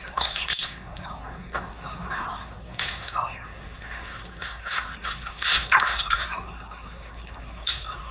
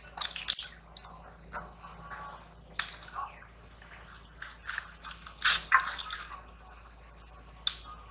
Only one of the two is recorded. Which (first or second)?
second